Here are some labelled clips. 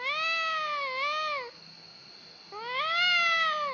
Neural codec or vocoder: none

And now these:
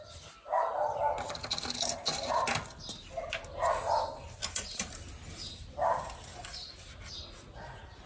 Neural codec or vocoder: none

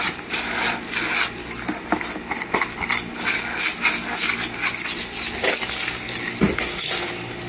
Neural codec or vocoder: none